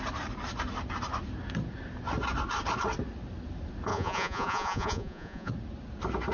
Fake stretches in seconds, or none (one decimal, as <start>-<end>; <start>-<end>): 3.9-5.5